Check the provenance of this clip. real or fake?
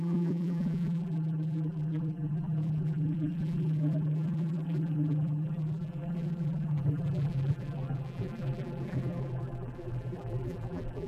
fake